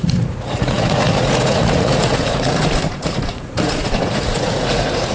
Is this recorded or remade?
remade